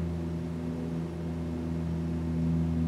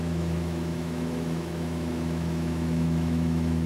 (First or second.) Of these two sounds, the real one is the first